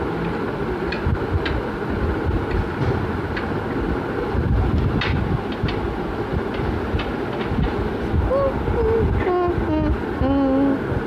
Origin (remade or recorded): recorded